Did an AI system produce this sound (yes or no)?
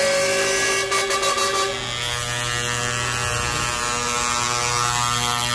no